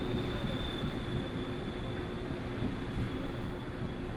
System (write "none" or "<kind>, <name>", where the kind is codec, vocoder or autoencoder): none